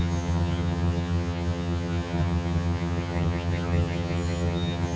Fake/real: fake